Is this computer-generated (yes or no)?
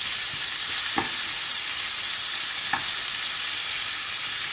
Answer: no